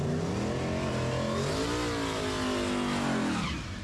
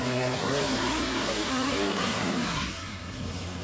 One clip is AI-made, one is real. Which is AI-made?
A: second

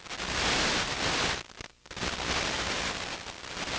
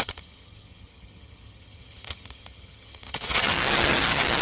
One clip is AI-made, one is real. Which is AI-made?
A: second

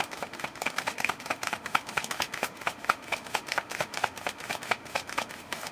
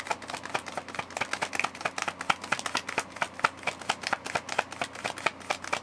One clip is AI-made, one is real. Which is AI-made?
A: first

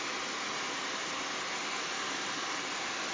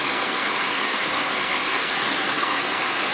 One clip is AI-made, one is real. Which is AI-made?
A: second